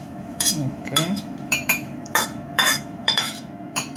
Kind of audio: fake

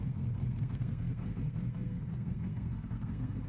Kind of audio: fake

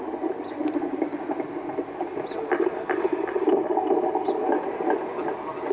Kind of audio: real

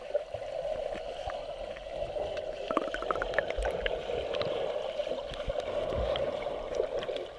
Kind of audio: real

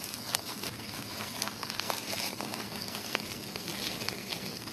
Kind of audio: fake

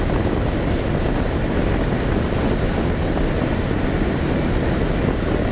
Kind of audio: real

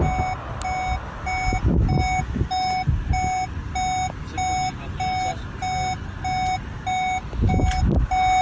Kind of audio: real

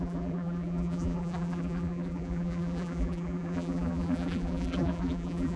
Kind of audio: fake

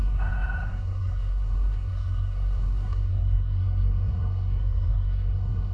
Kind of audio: fake